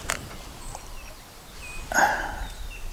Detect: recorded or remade recorded